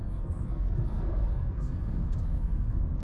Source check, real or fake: fake